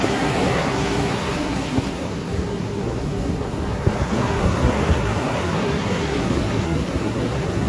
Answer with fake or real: fake